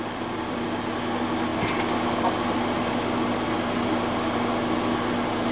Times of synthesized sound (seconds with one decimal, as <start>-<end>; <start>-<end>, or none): none